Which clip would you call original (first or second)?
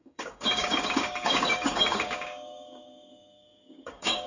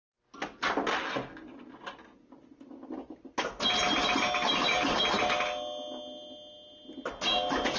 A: second